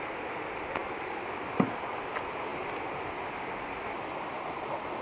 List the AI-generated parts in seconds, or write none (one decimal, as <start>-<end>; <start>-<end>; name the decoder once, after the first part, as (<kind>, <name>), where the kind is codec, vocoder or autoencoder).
none

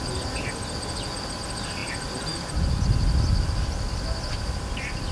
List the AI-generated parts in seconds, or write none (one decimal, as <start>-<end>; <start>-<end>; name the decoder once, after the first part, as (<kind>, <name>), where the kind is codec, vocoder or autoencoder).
none

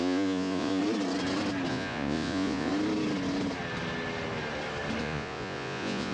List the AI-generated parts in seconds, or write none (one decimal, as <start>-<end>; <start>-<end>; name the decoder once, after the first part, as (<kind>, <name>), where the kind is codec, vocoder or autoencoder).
0.0-0.8 (vocoder, Vocos); 1.7-2.7; 5.0-6.1

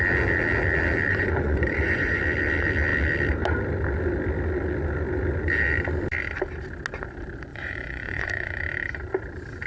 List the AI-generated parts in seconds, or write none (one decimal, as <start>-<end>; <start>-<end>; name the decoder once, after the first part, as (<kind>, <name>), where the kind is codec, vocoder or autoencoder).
1.1-2.2 (vocoder, Vocos); 7.5-8.6

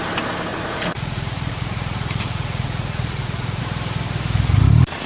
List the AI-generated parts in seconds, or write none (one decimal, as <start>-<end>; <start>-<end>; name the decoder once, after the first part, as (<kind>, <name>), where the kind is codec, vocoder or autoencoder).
0.5-3.6 (vocoder, Vocos)

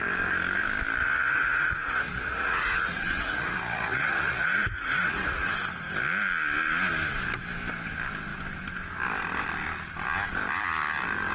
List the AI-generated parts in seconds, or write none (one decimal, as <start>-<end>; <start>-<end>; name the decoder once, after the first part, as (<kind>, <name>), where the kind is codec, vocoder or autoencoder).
1.0-5.5 (vocoder, Vocos)

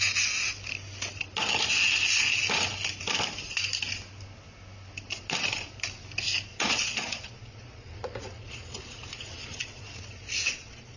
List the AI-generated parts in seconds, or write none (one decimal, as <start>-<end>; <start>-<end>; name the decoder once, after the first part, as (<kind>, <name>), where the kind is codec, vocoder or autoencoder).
6.5-11.0 (vocoder, Vocos)